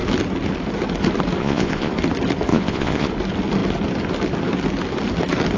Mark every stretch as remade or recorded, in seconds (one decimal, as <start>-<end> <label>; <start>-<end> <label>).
0.0-1.4 recorded; 1.4-1.9 remade; 1.9-2.5 recorded; 2.5-3.1 remade; 3.1-5.6 recorded